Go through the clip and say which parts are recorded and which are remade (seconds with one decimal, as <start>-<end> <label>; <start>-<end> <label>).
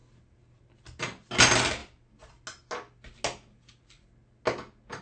0.0-5.0 recorded